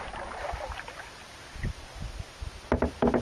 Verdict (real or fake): real